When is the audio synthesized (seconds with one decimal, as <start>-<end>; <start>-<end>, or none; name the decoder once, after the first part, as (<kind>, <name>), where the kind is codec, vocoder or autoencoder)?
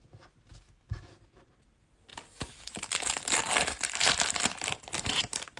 0.5-1.1 (autoencoder, DAC-VAE)